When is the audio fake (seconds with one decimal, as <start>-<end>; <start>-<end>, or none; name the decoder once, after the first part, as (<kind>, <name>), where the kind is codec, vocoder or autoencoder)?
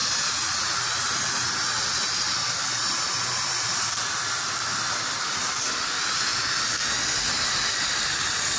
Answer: none